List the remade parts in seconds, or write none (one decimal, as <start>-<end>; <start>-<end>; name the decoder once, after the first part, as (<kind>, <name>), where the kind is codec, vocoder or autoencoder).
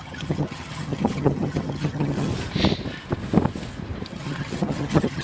0.0-2.3 (vocoder, HiFi-GAN); 4.1-5.2